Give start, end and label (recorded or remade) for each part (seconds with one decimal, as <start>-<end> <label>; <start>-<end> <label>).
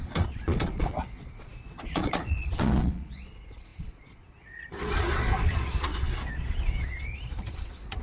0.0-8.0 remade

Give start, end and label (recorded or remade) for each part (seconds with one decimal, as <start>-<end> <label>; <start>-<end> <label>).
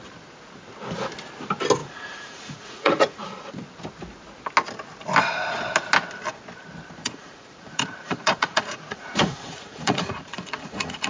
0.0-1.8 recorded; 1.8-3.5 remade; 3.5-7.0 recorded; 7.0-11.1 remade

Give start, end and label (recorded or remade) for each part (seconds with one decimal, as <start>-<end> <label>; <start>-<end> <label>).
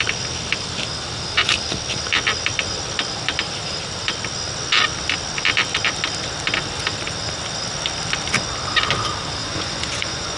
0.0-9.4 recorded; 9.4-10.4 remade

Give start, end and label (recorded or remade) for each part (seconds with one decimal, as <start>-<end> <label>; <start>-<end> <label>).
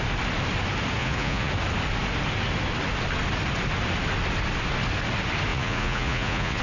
0.0-1.0 recorded; 1.0-1.5 remade; 1.5-5.5 recorded; 5.5-6.6 remade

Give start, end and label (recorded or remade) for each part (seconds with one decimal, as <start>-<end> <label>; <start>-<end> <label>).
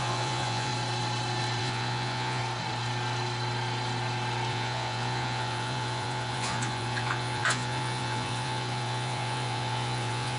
0.0-0.7 remade; 0.7-1.6 recorded; 1.6-2.4 remade; 2.4-4.5 recorded; 4.5-10.4 remade